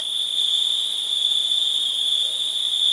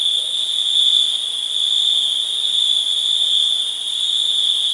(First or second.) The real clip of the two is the second